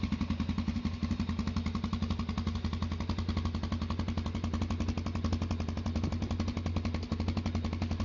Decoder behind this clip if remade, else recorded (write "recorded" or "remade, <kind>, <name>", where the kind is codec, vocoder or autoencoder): recorded